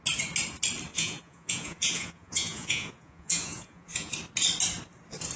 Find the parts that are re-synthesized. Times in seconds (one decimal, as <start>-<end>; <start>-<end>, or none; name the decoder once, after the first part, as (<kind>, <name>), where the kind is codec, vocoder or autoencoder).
0.9-4.1 (vocoder, Vocos)